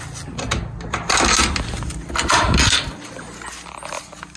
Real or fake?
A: real